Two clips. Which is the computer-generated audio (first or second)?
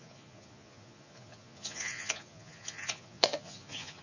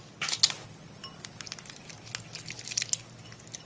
first